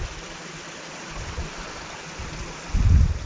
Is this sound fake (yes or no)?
no